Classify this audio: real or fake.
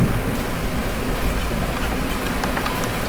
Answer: real